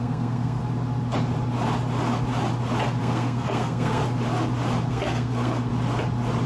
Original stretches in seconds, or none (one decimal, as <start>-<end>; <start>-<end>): 0.6-3.0; 4.0-4.9; 5.7-6.5